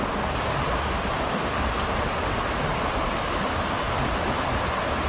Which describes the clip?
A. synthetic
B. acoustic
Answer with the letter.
B